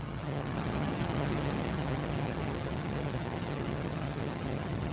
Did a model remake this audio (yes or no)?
yes